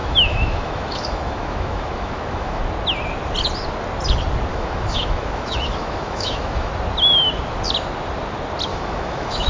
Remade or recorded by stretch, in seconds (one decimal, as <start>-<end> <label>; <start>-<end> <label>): 0.0-2.6 remade; 2.6-4.5 recorded; 4.5-6.7 remade; 6.7-8.7 recorded; 8.7-9.5 remade